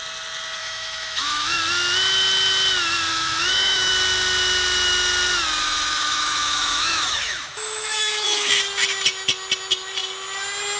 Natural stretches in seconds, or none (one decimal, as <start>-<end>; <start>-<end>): 0.0-0.6; 1.6-3.1; 3.9-5.6; 8.5-10.8